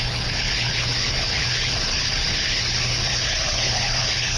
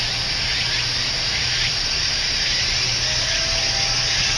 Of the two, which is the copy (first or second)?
first